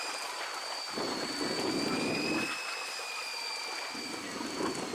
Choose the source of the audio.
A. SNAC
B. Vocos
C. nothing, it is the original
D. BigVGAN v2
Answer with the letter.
D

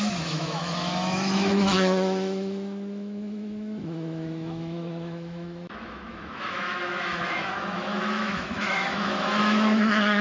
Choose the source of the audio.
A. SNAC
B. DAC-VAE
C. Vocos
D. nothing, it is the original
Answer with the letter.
B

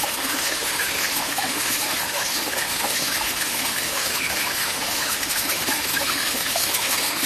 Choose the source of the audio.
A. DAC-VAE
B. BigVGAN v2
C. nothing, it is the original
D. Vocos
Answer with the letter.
A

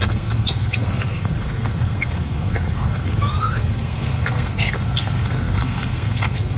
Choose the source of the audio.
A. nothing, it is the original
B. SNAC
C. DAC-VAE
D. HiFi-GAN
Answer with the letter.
B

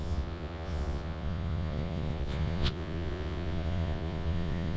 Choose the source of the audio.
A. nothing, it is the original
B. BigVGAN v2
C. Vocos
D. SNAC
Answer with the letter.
C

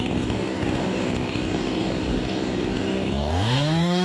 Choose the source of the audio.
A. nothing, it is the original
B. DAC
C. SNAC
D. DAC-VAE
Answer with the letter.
B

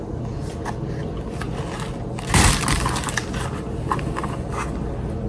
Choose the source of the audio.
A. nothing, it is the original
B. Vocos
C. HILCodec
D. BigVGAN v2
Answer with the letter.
A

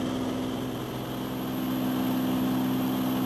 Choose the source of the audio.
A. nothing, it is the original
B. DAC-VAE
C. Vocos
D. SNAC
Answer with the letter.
A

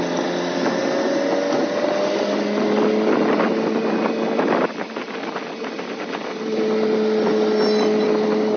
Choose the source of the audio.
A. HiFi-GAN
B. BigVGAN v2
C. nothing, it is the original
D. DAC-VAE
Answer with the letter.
C